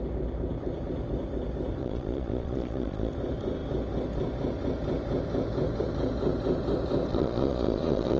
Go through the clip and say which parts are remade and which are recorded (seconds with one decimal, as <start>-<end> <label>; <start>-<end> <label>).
0.0-1.8 recorded; 1.8-3.1 remade; 3.1-7.1 recorded; 7.1-8.2 remade